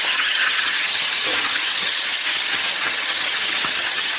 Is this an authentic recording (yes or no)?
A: no